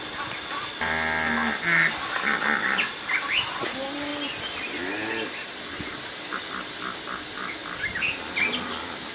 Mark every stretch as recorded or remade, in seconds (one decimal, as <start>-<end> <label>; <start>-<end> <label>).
0.0-9.1 recorded